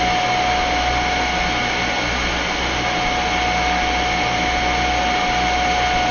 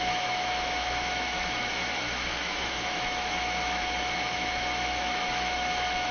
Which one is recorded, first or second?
first